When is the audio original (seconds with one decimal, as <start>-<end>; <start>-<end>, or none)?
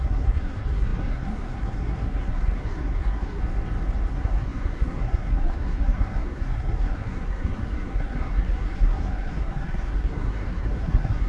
3.4-4.1